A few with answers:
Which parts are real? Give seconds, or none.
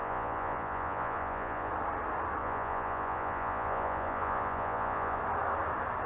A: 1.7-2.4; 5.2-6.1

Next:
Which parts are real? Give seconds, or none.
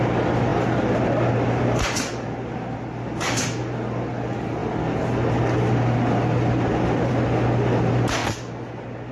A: 0.0-9.1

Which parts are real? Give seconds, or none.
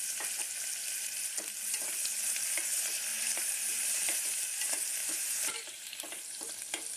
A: 0.0-3.1; 4.4-5.0; 6.5-7.0